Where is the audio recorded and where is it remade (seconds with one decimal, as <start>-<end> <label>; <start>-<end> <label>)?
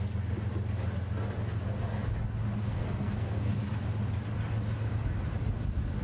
0.0-2.6 recorded; 2.6-3.5 remade; 3.5-6.0 recorded